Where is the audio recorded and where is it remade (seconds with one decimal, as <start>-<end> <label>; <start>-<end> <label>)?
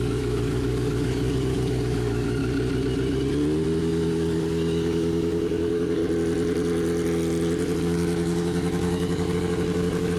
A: 0.0-2.4 remade; 2.4-3.8 recorded; 3.8-6.0 remade; 6.0-7.8 recorded; 7.8-10.2 remade